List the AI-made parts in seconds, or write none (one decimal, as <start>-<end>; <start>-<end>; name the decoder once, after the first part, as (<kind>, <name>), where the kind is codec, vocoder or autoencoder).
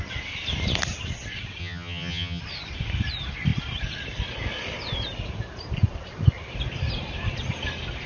1.6-2.4 (vocoder, HiFi-GAN)